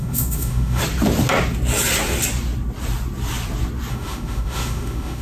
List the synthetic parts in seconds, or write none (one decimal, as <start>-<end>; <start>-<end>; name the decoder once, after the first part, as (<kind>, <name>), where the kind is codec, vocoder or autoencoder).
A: 0.0-0.8 (autoencoder, DAC-VAE); 3.9-5.2